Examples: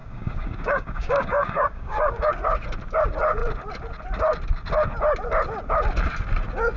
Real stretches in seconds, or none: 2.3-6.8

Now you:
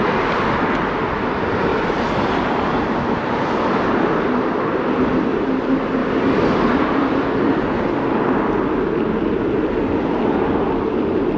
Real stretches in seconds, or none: 0.0-11.4

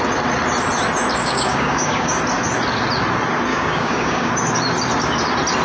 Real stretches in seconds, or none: 0.0-1.2; 2.2-3.5; 4.3-5.6

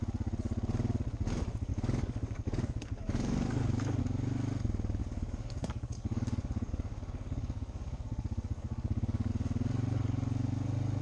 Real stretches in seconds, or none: 0.0-1.7; 4.0-5.0; 9.3-11.0